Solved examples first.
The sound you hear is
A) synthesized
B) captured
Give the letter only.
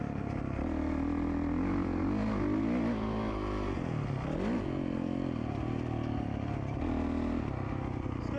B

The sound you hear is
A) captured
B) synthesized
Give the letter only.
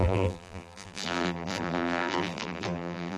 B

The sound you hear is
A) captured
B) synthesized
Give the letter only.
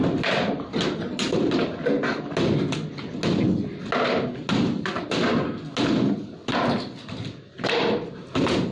A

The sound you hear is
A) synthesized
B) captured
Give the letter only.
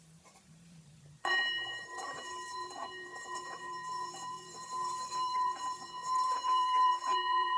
A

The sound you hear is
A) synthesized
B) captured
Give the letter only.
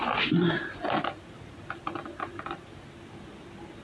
B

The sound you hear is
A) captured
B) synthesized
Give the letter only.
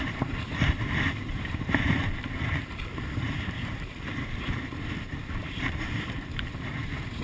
B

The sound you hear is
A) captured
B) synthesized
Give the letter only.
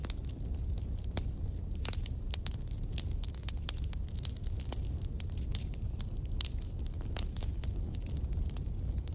A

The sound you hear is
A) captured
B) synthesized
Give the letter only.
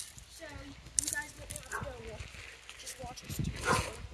A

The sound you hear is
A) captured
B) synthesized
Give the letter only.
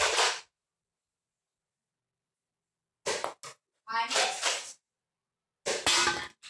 A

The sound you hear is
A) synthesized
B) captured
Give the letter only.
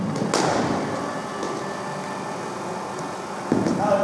B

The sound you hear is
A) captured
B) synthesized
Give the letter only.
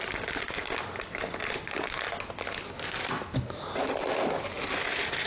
A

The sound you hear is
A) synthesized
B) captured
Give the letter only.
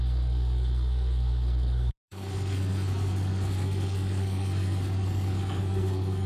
A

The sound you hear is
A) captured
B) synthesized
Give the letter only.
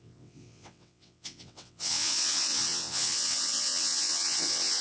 B